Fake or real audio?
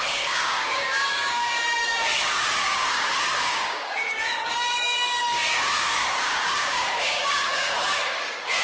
fake